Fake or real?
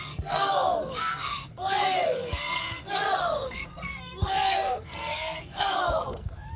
fake